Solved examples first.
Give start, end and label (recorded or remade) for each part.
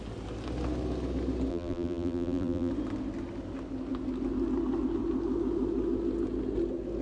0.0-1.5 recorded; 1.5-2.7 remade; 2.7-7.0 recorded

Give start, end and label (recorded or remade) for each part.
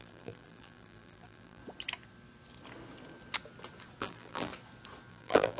0.0-1.6 remade; 1.6-4.0 recorded; 4.0-4.5 remade; 4.5-5.1 recorded; 5.1-5.6 remade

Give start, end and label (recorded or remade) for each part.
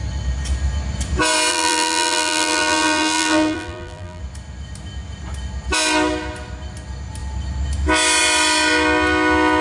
0.0-1.5 recorded; 1.5-4.2 remade; 4.2-9.6 recorded